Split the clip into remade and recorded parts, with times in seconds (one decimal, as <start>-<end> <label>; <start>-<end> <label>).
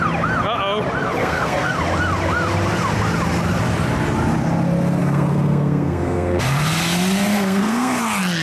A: 0.0-1.2 recorded; 1.2-1.7 remade; 1.7-5.0 recorded; 5.0-6.4 remade; 6.4-7.3 recorded; 7.3-8.0 remade; 8.0-8.4 recorded